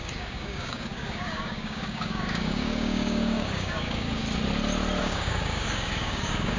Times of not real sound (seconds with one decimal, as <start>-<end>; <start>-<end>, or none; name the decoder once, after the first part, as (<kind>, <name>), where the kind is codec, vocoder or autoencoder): 0.0-4.2 (codec, DAC); 5.0-6.6